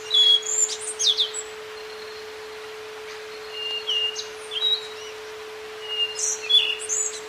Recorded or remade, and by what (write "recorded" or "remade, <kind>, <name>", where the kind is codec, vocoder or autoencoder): recorded